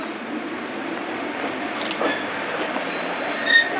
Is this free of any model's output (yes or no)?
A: yes